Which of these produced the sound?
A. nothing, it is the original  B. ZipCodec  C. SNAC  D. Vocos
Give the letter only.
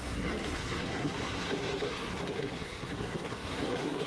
C